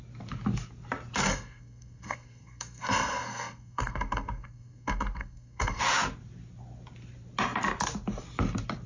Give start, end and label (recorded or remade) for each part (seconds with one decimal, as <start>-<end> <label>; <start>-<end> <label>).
0.0-1.2 recorded; 1.2-5.8 remade; 5.8-8.9 recorded